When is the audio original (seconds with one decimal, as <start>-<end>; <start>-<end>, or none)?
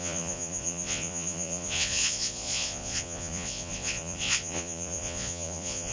none